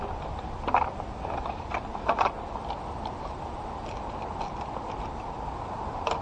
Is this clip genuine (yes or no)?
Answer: yes